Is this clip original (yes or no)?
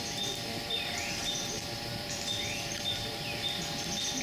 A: no